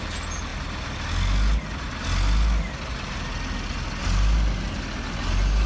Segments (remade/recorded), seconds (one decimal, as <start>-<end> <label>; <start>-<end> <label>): 0.0-5.7 recorded